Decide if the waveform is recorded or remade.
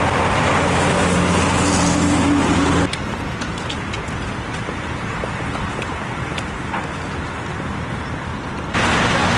recorded